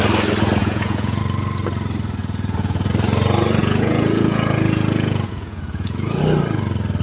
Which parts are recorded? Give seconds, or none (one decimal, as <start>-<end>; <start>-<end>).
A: 0.0-0.6; 1.2-2.2; 2.9-3.6; 6.2-7.0